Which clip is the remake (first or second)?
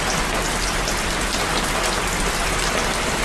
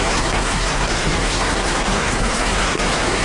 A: second